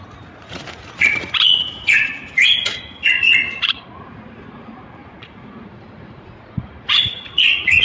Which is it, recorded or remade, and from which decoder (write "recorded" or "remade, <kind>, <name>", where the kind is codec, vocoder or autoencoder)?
remade, vocoder, Vocos